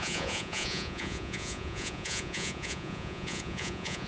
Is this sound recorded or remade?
remade